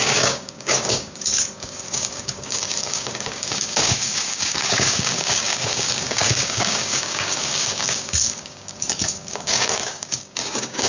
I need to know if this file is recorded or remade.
remade